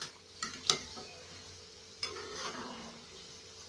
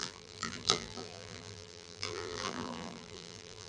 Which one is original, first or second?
first